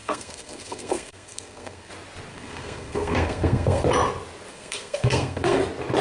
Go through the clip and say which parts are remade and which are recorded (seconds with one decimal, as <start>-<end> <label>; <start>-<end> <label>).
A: 0.0-1.9 remade; 1.9-2.3 recorded; 2.3-3.8 remade; 3.8-4.5 recorded; 4.5-5.6 remade; 5.6-6.0 recorded